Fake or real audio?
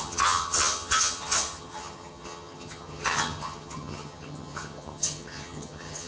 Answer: fake